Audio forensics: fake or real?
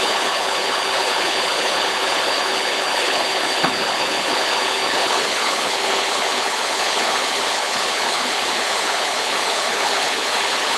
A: fake